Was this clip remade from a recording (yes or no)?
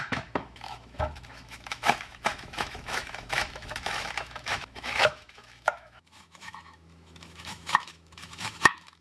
yes